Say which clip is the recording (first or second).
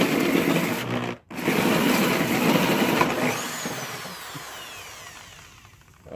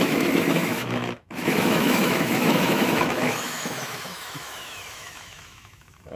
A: first